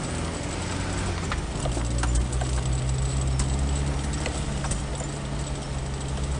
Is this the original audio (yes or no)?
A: yes